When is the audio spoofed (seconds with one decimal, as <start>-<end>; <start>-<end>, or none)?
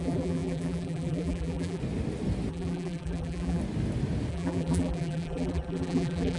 0.0-1.8; 2.5-3.6; 4.3-6.4